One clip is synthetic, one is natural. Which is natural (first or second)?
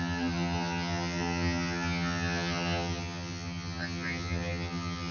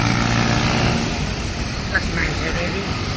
second